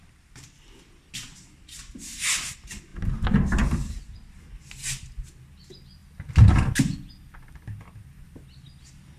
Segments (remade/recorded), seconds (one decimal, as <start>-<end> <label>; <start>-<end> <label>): 0.0-9.2 recorded